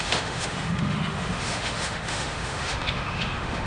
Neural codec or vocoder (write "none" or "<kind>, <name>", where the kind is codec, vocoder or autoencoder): autoencoder, DAC-VAE